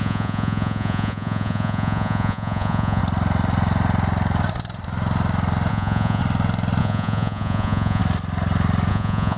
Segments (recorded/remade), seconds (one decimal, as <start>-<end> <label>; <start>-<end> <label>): 0.0-3.0 remade; 3.0-5.7 recorded; 5.7-6.2 remade; 6.2-6.8 recorded; 6.8-8.0 remade; 8.0-8.9 recorded; 8.9-9.4 remade